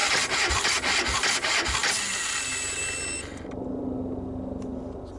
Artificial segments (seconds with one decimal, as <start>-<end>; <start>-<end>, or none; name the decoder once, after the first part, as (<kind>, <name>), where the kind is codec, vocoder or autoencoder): none